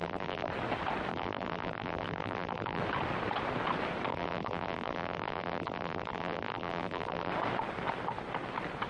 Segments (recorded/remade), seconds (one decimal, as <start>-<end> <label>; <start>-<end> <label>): 0.0-0.5 remade; 0.5-1.1 recorded; 1.1-2.8 remade; 2.8-4.1 recorded; 4.1-7.3 remade; 7.3-8.9 recorded